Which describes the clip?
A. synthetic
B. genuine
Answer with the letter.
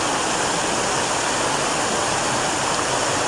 B